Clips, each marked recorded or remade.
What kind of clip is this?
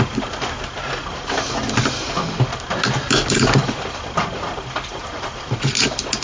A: recorded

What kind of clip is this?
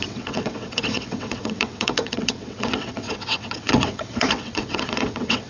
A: remade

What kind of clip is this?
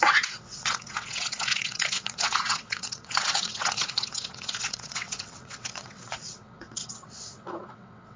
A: remade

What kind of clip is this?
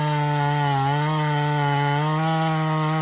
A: recorded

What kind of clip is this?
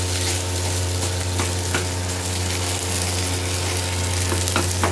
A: recorded